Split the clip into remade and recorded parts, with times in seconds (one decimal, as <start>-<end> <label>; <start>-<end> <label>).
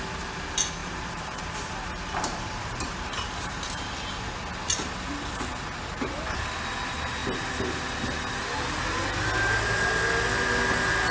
0.0-0.8 recorded; 0.8-4.1 remade; 4.1-11.1 recorded